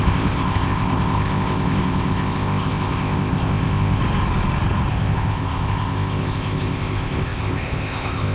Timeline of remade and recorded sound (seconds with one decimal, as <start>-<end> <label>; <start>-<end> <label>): 0.0-4.0 remade; 4.0-4.9 recorded; 4.9-8.3 remade